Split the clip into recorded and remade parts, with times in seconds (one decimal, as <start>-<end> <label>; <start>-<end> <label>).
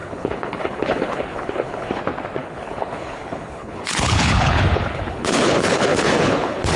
0.0-2.0 remade; 2.0-2.4 recorded; 2.4-6.8 remade